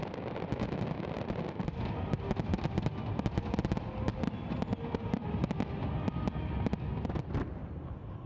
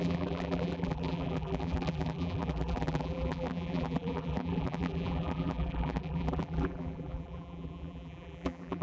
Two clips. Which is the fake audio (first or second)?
second